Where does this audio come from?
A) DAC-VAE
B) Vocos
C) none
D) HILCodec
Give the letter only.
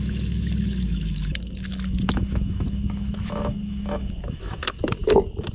A